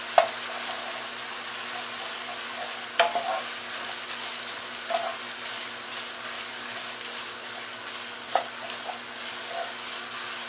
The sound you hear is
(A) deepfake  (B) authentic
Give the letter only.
B